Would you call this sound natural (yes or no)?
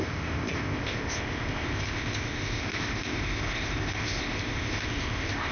no